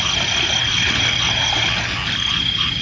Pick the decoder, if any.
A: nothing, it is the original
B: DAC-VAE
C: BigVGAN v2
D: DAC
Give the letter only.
A